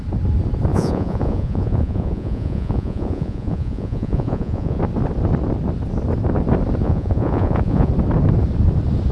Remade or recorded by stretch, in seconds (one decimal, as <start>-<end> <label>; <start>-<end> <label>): 0.0-0.7 recorded; 0.7-4.8 remade; 4.8-6.8 recorded; 6.8-7.9 remade; 7.9-9.1 recorded